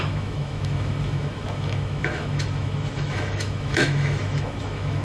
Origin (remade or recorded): remade